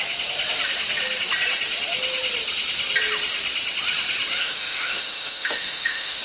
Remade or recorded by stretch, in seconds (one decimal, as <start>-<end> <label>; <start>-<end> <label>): 0.0-4.4 recorded; 4.4-6.2 remade